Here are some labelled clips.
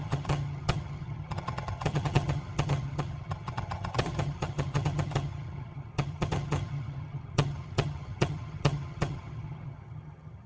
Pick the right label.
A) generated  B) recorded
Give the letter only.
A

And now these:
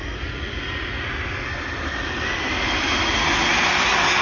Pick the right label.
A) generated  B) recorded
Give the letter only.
B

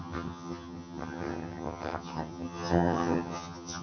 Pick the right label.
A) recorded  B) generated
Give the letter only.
B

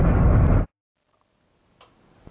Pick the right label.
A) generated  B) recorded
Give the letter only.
B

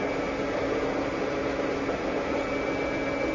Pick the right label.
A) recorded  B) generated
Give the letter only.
A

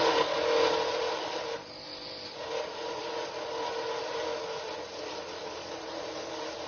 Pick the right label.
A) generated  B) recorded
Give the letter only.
B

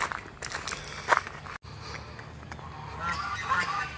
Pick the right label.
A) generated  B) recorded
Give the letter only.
B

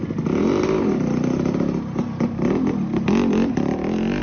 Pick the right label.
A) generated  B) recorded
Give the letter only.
B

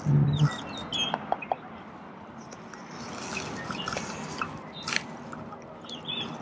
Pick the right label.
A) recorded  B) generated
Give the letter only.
A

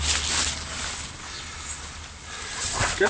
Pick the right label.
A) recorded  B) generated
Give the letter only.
A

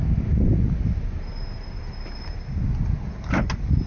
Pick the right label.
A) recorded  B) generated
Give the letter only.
A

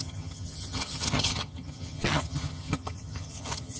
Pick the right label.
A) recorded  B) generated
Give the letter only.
B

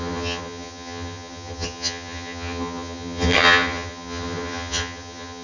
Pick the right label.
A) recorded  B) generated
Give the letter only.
B